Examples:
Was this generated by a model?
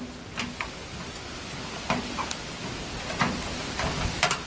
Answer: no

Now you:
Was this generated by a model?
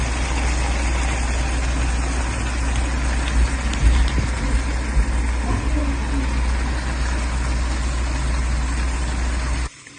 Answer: no